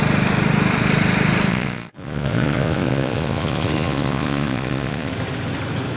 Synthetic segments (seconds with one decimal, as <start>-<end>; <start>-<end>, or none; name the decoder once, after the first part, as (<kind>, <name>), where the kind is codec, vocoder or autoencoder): 1.5-5.1 (vocoder, Vocos)